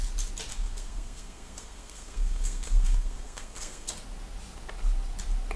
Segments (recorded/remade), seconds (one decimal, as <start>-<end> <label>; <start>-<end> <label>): 0.0-0.5 recorded; 0.5-3.9 remade; 3.9-5.6 recorded